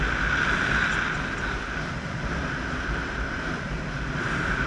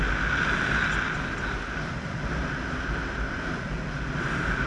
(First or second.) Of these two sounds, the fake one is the first